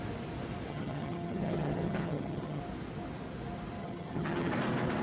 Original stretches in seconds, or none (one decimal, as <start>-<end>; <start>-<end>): 0.0-0.7; 2.6-3.8; 4.5-5.0